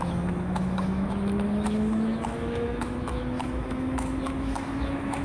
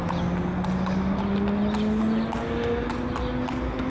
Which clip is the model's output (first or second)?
first